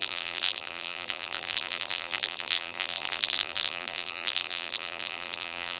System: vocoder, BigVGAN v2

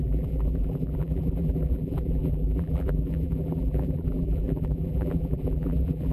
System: vocoder, BigVGAN v2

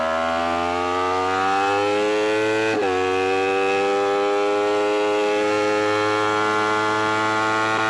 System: none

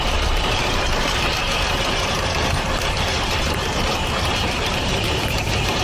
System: vocoder, BigVGAN v2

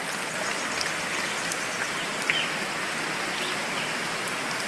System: none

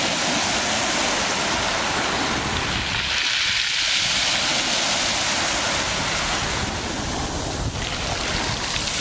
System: none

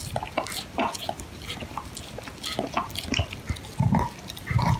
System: none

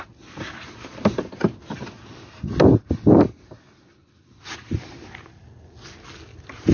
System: none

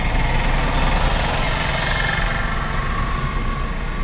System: none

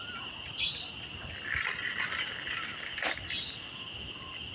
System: none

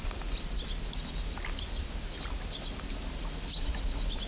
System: none